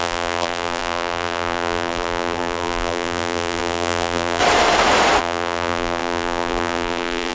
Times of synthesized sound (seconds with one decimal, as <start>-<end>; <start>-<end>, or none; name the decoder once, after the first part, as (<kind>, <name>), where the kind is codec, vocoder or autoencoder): 0.0-4.4 (vocoder, BigVGAN v2); 5.2-7.3